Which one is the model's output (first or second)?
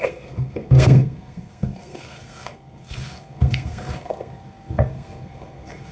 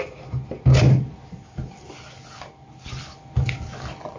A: first